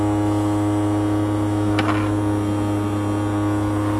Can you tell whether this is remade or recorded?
recorded